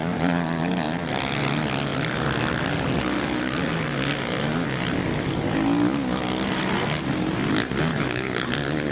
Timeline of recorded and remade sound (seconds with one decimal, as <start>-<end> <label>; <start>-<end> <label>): 0.0-7.9 recorded; 7.9-8.5 remade; 8.5-8.9 recorded